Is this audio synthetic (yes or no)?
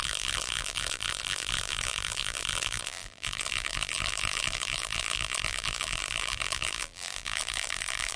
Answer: yes